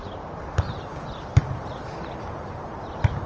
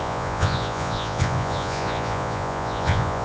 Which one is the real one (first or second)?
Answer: first